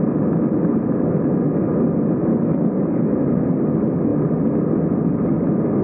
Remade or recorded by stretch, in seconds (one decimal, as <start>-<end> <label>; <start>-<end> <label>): 0.0-2.3 recorded; 2.3-3.1 remade; 3.1-5.8 recorded